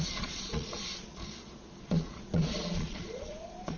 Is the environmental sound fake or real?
fake